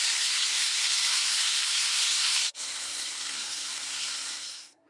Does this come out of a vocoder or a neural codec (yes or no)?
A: yes